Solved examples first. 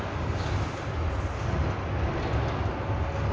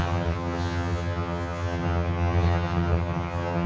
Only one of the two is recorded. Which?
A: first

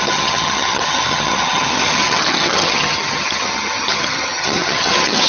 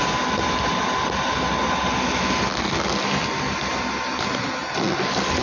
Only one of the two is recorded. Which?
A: second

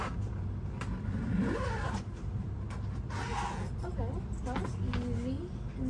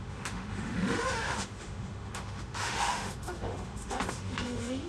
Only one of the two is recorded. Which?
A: first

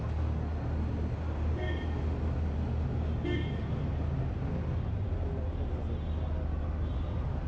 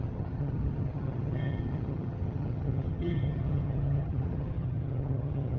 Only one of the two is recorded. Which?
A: first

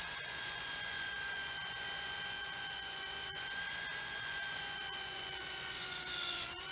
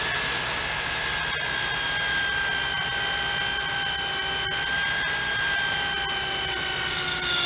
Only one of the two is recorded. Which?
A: second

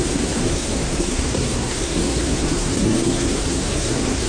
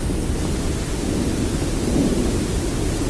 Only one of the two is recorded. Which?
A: second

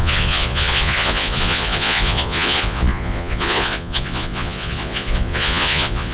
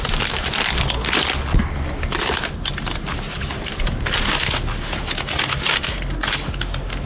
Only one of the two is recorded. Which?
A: second